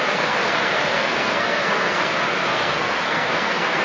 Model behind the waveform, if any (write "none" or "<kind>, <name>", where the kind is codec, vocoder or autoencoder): codec, SNAC